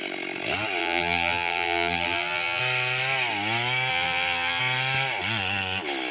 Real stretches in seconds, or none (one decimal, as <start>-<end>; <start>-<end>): 0.0-0.8; 2.6-3.9; 4.6-6.1